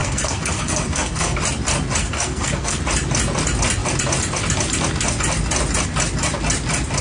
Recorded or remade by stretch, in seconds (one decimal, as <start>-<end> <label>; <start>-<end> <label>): 0.0-1.4 remade; 1.4-2.0 recorded; 2.0-2.8 remade; 2.8-7.0 recorded